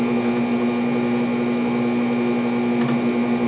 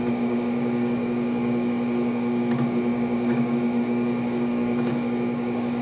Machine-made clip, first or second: second